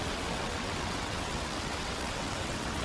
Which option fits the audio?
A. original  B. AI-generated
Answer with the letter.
B